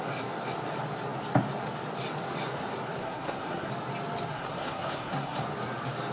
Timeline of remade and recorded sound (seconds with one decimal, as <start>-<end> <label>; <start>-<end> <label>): 0.0-3.0 recorded; 3.0-3.7 remade; 3.7-4.3 recorded; 4.3-5.4 remade; 5.4-6.1 recorded